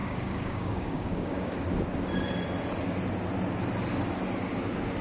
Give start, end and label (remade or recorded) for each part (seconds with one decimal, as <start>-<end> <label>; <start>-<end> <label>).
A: 0.0-1.5 remade; 1.5-5.0 recorded